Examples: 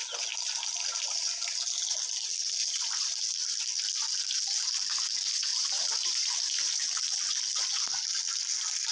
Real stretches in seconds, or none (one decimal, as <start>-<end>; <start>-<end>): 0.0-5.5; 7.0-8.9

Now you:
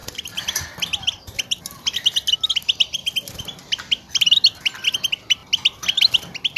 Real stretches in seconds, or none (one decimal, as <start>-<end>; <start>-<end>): 1.2-6.6

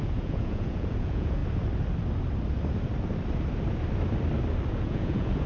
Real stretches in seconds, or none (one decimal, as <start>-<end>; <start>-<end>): 1.4-4.7